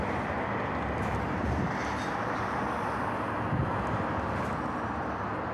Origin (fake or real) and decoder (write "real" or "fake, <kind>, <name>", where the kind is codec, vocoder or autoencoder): real